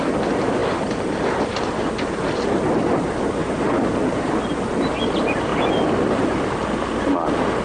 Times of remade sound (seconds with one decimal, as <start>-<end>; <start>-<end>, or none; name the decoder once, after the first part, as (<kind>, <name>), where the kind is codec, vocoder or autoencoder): none